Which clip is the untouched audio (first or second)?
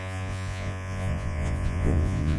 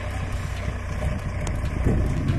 second